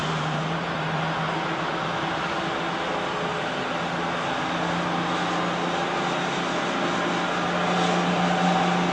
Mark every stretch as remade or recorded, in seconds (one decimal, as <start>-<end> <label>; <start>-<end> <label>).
0.0-1.0 remade; 1.0-8.9 recorded